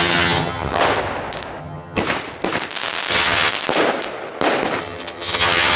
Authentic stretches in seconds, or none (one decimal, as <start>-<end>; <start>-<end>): 0.8-1.6; 2.0-3.1; 3.5-4.8